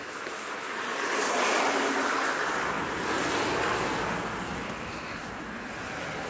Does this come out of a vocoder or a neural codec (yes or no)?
no